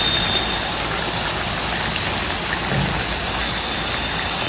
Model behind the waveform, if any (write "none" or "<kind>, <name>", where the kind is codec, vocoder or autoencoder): none